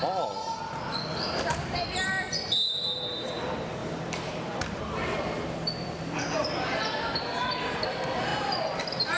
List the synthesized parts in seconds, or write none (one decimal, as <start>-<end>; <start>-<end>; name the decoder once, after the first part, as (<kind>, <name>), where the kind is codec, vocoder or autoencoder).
3.8-4.6 (vocoder, BigVGAN v2)